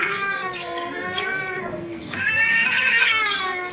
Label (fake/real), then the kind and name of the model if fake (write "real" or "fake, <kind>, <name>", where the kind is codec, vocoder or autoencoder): fake, codec, SNAC